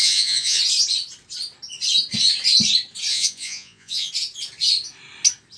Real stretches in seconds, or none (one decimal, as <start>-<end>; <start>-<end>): 0.6-3.1; 4.1-5.6